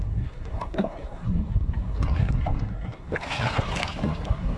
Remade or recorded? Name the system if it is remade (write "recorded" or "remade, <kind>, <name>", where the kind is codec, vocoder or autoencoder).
remade, codec, SNAC